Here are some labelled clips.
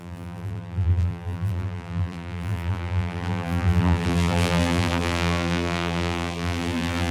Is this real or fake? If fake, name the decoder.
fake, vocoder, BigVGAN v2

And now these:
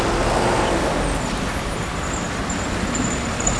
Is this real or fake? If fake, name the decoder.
real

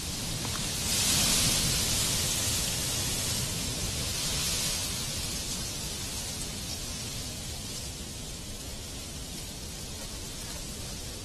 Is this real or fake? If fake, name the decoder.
real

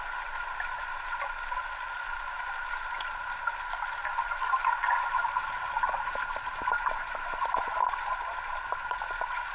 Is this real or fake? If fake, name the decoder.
real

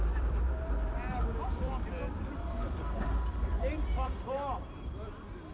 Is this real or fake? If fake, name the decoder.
fake, vocoder, BigVGAN v2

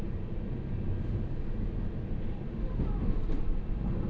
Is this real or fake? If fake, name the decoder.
real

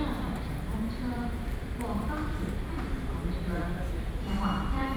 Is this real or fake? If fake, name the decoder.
fake, vocoder, BigVGAN v2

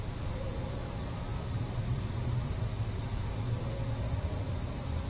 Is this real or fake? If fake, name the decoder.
fake, vocoder, BigVGAN v2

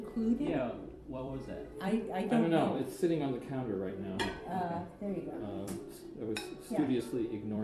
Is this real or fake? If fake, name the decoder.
fake, vocoder, BigVGAN v2